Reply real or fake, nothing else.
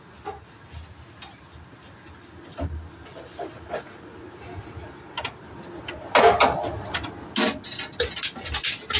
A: real